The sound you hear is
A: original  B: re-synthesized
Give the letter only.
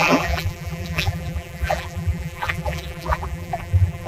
B